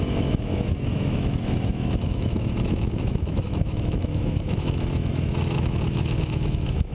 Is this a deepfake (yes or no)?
yes